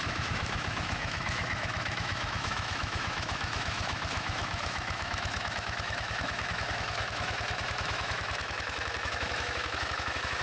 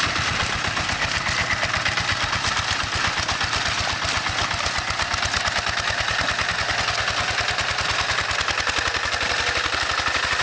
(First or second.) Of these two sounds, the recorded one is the second